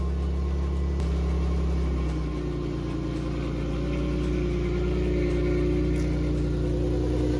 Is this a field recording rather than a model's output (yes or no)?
yes